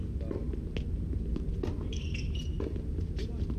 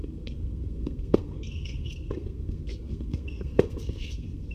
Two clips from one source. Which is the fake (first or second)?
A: second